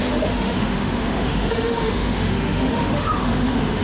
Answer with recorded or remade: remade